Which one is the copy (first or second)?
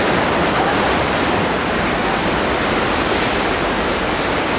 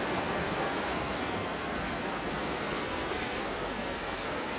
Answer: second